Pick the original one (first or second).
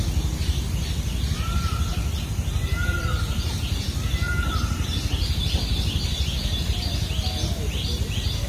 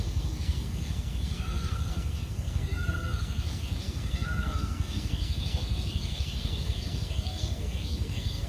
first